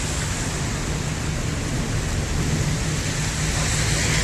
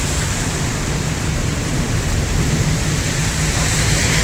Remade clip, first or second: second